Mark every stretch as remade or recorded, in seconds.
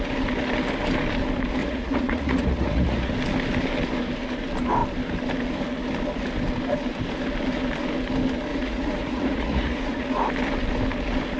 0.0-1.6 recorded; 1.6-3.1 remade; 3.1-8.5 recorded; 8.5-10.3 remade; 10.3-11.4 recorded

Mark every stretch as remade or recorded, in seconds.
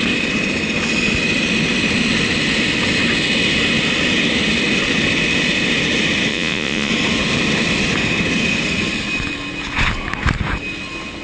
0.0-6.3 recorded; 6.3-6.9 remade; 6.9-11.2 recorded